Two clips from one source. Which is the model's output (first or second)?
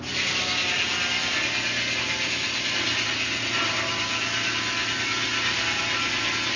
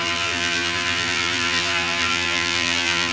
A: second